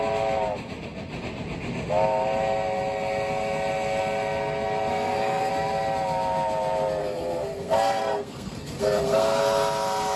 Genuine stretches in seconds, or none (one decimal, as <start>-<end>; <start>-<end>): 0.0-4.9; 5.5-7.0; 9.4-10.2

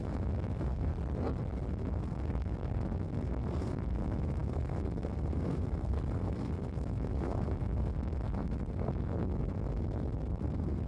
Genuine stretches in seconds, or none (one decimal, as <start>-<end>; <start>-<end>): 0.9-1.7

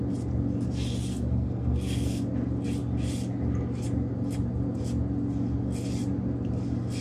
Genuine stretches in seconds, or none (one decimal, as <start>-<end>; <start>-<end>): 0.0-1.1; 2.2-7.0

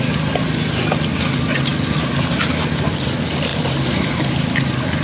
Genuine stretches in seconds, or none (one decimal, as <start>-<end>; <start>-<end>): 0.0-3.5; 4.2-5.0

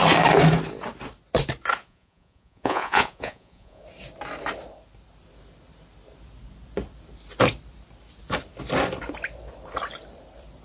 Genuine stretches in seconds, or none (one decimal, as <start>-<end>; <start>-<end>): 0.0-1.8; 3.8-10.6

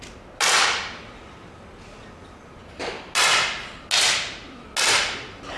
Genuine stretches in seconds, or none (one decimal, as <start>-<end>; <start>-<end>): 0.0-5.6

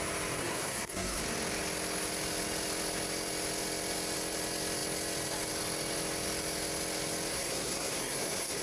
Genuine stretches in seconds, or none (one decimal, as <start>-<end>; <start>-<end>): 0.0-0.4; 1.2-7.3